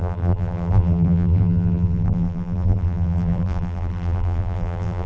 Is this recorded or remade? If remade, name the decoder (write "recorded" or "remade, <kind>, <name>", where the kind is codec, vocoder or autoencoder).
remade, vocoder, BigVGAN v2